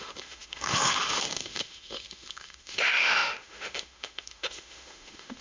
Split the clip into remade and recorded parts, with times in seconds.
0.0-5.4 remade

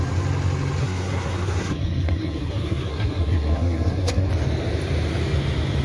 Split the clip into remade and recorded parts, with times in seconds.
0.0-0.8 recorded; 0.8-4.3 remade; 4.3-5.8 recorded

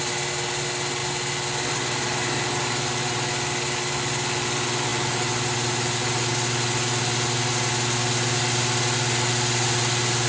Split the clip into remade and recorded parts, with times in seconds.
0.0-10.3 recorded